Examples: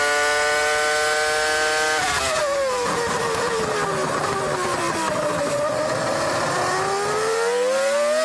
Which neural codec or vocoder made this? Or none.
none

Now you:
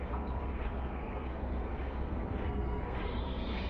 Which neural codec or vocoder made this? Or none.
codec, SNAC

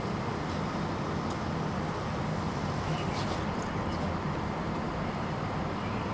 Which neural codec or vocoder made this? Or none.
none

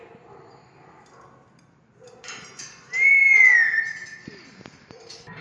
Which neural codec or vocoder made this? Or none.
none